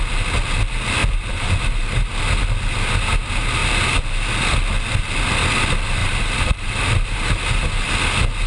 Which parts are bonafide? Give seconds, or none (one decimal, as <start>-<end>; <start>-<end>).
0.0-1.0; 2.2-6.0; 6.9-8.5